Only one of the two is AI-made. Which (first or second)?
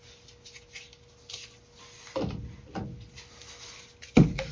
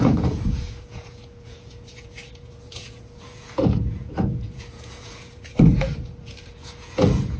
second